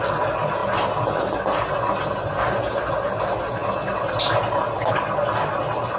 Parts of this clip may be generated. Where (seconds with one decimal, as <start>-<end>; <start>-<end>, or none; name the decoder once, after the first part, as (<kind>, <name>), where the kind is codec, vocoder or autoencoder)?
none